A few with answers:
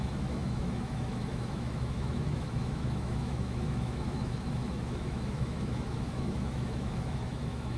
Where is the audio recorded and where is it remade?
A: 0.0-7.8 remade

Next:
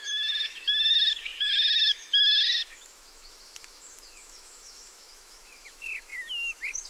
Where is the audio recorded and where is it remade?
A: 0.0-6.9 remade